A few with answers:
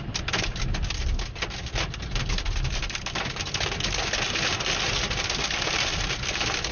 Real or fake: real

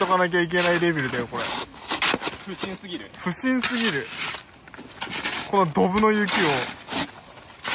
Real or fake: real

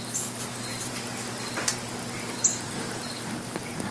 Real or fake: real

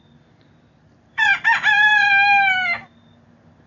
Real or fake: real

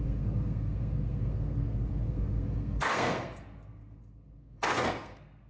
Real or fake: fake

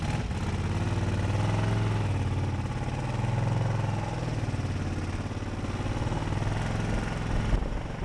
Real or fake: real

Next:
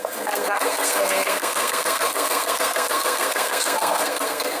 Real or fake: fake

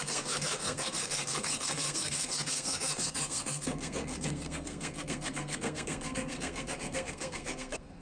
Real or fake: fake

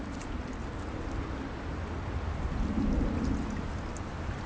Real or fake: real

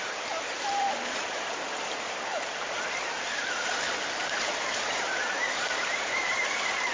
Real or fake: fake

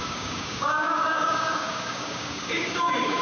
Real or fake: fake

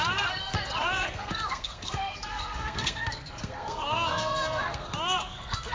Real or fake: fake